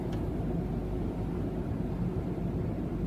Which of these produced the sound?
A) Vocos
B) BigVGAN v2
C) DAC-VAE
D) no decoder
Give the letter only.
D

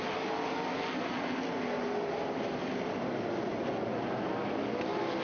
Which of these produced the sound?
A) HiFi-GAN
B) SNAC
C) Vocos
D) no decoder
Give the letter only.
D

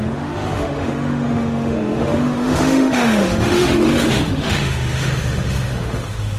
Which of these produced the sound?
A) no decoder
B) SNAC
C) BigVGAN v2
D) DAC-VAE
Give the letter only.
D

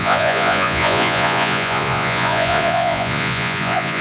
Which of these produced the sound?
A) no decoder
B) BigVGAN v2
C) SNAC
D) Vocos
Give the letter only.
D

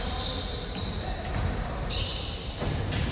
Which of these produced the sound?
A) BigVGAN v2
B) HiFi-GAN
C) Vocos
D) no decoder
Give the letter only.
D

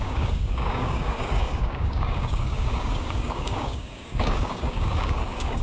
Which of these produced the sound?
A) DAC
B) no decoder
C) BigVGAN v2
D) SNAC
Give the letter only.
A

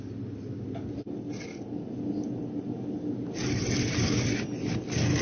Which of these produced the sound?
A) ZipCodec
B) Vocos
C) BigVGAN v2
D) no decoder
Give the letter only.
D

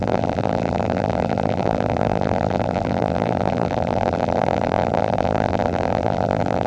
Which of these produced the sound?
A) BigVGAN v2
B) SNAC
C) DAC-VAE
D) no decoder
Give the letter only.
A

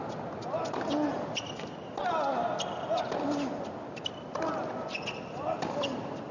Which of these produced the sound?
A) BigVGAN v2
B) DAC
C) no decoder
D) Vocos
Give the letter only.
C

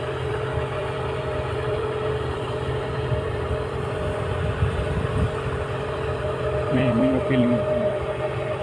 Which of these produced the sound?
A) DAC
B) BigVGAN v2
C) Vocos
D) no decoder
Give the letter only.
B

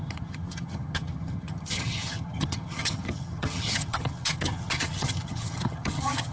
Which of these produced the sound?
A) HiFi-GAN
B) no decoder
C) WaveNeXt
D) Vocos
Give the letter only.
A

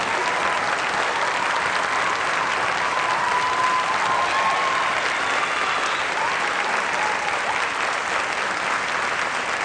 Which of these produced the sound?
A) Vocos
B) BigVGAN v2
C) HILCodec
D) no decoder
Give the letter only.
D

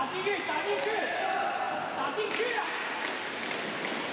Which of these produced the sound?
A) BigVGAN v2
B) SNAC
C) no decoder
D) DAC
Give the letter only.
C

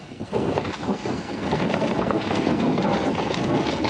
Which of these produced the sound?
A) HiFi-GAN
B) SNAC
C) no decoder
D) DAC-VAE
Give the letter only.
B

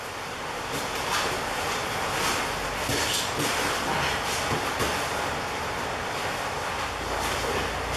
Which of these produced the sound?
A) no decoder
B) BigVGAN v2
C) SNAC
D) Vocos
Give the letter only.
A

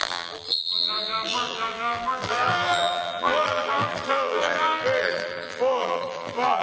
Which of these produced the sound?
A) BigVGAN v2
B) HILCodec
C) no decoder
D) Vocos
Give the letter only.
A